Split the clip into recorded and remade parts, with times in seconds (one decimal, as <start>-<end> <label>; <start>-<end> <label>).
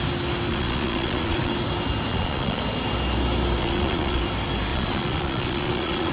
0.0-0.5 recorded; 0.5-1.5 remade; 1.5-2.1 recorded; 2.1-2.6 remade; 2.6-3.6 recorded; 3.6-4.2 remade; 4.2-4.7 recorded; 4.7-6.1 remade